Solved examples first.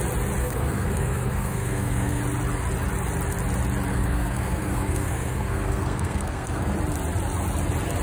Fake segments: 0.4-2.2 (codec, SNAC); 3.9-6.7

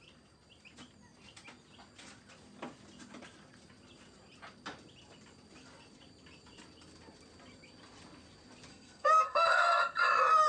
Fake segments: 8.7-9.8 (codec, SNAC)

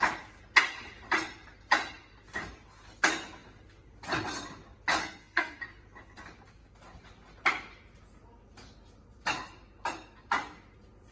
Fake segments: 5.0-5.6 (codec, SNAC)

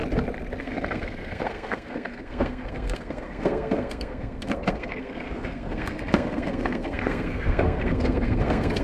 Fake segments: 0.6-8.8 (codec, SNAC)

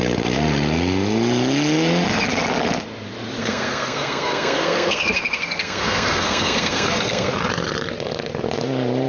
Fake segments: 3.4-7.3 (codec, SNAC)

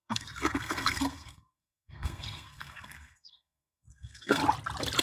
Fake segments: 0.0-4.4 (codec, SNAC)